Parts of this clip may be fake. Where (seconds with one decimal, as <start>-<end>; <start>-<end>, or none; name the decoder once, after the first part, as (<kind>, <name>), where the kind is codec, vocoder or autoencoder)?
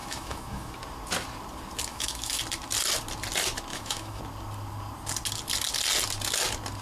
0.0-0.7 (autoencoder, DAC-VAE); 1.9-2.4; 3.7-4.2